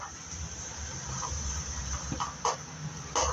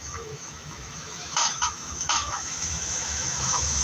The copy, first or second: second